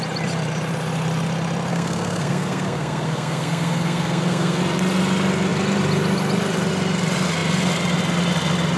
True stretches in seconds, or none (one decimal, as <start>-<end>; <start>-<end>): 0.0-1.7; 4.6-8.8